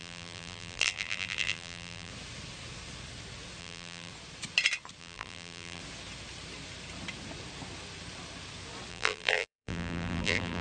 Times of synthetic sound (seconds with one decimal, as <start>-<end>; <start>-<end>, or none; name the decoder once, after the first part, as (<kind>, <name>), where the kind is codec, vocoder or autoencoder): 0.0-2.1 (vocoder, BigVGAN v2); 3.6-4.1; 5.0-5.8; 8.9-10.6